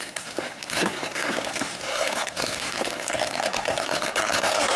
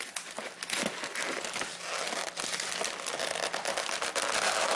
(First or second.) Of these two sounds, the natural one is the second